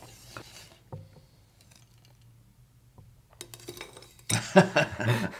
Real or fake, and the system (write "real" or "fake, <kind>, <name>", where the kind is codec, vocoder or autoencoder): real